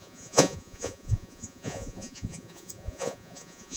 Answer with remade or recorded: remade